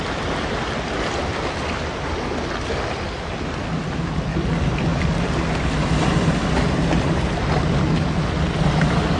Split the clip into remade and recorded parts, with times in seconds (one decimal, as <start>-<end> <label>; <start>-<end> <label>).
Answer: 0.0-9.2 recorded